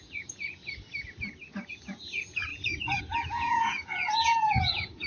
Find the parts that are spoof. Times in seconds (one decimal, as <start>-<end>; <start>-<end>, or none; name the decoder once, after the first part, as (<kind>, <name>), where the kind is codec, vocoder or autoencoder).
0.0-0.6 (vocoder, Vocos); 1.7-5.1